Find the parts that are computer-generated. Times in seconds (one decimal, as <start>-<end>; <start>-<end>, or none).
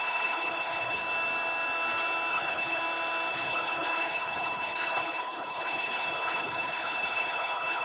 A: 0.0-1.0; 2.3-2.8; 3.3-7.8